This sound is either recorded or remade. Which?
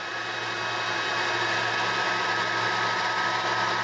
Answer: recorded